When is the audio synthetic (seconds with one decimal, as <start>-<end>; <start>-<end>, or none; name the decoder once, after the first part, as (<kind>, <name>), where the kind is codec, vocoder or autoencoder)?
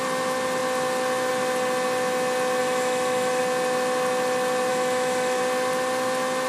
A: 2.6-3.4 (autoencoder, DAC-VAE); 4.7-5.4